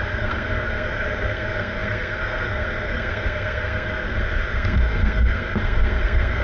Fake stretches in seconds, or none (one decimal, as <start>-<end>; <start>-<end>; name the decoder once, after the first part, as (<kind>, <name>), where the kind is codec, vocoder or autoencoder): 0.0-6.4 (codec, SNAC)